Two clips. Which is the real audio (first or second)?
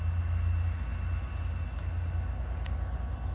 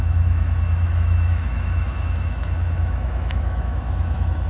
first